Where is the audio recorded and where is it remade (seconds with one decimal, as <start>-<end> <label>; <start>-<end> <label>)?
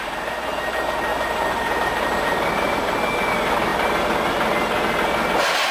0.0-5.7 recorded